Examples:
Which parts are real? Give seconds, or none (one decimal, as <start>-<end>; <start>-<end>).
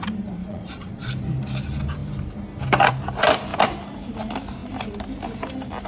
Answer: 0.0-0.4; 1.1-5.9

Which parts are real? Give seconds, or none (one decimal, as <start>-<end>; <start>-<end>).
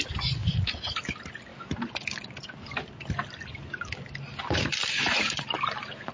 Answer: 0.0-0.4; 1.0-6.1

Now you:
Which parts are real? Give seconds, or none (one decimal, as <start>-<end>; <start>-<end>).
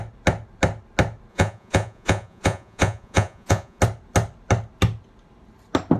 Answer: 0.0-1.3; 3.8-6.0